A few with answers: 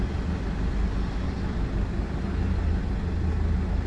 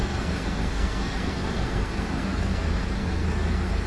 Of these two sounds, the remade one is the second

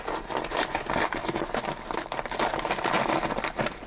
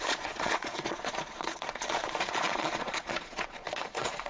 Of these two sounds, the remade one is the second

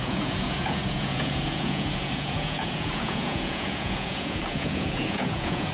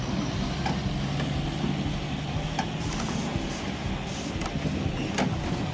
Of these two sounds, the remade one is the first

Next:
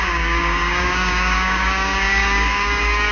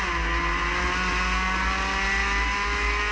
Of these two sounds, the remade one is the first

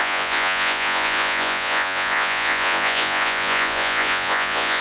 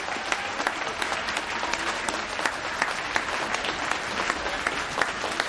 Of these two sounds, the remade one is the first